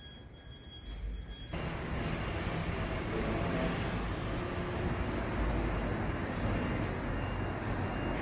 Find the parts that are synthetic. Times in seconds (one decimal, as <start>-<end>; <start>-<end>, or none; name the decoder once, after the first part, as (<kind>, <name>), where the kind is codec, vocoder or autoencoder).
2.6-3.4 (vocoder, BigVGAN v2)